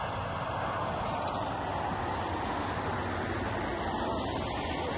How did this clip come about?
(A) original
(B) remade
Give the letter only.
A